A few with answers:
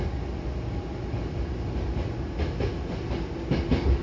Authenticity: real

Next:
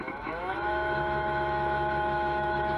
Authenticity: fake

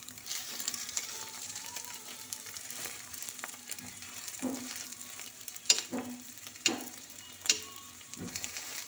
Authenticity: fake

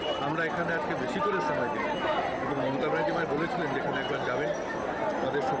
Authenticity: real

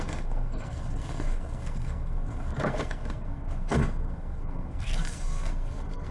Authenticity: fake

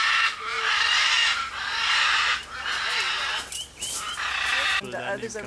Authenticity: real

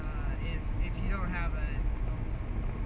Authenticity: real